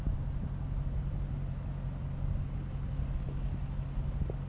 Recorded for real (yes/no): yes